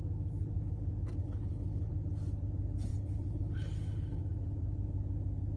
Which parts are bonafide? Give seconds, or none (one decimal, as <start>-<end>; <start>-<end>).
0.0-1.2; 1.9-2.9; 4.2-5.6